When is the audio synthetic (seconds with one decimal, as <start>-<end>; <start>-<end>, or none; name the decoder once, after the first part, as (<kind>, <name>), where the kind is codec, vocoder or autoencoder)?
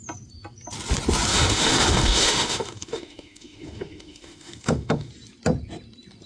1.3-5.1 (autoencoder, DAC-VAE)